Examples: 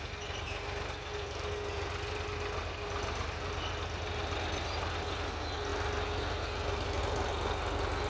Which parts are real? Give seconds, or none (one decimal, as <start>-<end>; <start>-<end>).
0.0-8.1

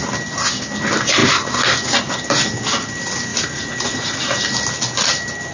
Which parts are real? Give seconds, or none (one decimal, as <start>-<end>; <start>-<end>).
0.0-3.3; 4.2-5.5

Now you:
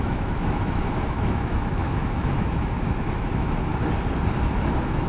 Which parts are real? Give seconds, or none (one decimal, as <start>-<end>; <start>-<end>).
3.7-4.5

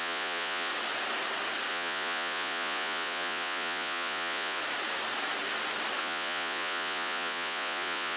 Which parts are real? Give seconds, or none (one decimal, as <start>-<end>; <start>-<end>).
0.7-1.7; 4.6-6.0

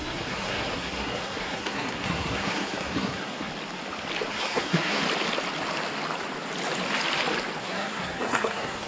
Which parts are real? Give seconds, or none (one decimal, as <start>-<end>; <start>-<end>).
3.5-4.3; 5.0-7.6